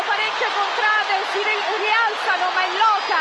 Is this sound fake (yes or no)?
no